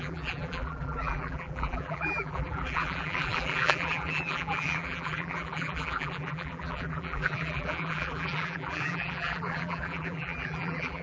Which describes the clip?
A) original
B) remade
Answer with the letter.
B